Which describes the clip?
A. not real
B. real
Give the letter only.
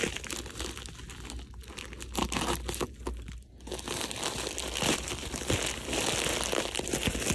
B